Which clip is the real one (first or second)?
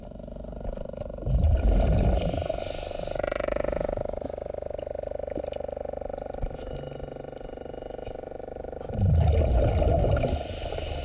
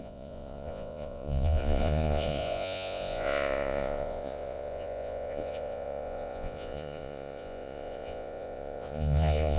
first